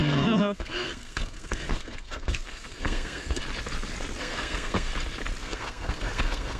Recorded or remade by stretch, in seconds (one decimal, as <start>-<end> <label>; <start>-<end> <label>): 0.0-3.4 remade; 3.4-4.2 recorded; 4.2-4.9 remade; 4.9-5.4 recorded; 5.4-6.6 remade

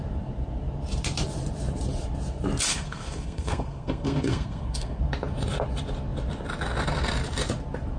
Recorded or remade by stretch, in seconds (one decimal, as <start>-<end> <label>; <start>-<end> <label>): 0.0-2.7 recorded; 2.7-5.0 remade; 5.0-8.0 recorded

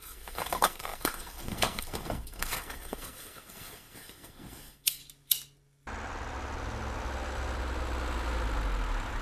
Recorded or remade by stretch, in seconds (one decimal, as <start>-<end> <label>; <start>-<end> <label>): 0.0-5.0 remade; 5.0-9.2 recorded

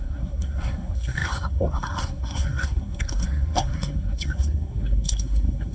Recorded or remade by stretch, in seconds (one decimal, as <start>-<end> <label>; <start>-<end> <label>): 0.0-5.7 remade

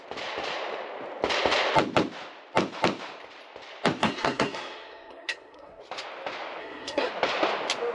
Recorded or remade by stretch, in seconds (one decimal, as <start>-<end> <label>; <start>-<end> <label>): 0.0-4.0 recorded; 4.0-5.8 remade; 5.8-6.6 recorded; 6.6-7.1 remade; 7.1-7.9 recorded

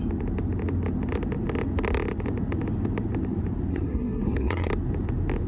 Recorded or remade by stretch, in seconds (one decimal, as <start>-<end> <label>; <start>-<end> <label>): 0.0-3.7 recorded; 3.7-4.7 remade; 4.7-5.5 recorded